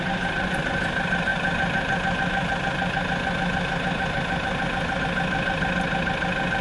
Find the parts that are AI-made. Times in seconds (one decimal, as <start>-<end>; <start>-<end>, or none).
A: none